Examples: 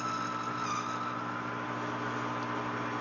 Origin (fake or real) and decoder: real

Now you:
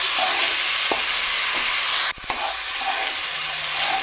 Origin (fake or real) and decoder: real